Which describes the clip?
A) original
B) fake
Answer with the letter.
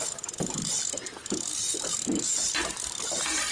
B